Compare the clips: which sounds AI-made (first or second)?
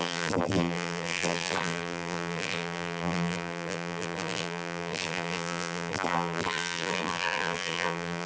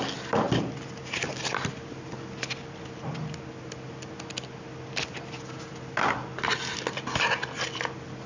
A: first